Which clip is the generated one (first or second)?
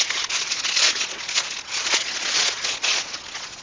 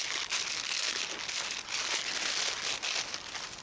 first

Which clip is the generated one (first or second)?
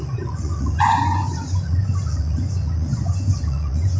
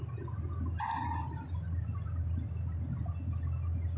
first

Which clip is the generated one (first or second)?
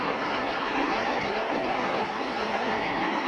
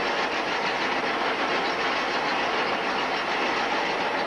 first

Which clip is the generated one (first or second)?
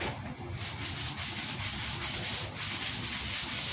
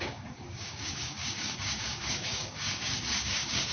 second